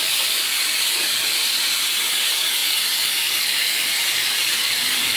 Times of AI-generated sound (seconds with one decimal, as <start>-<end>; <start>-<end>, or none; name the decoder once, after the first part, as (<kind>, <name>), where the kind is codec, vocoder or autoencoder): 0.0-1.4 (codec, DAC); 2.1-5.2